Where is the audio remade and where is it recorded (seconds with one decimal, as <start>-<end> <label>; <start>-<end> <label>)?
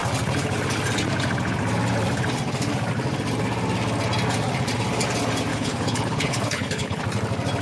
0.0-5.5 recorded; 5.5-7.0 remade; 7.0-7.6 recorded